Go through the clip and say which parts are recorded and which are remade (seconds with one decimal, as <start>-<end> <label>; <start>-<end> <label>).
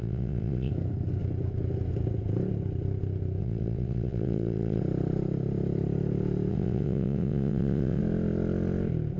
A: 0.0-0.7 remade; 0.7-3.4 recorded; 3.4-4.8 remade; 4.8-6.5 recorded; 6.5-8.0 remade; 8.0-9.2 recorded